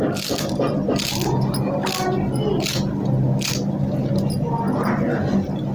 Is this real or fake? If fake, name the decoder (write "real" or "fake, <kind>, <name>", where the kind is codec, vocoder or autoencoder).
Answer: real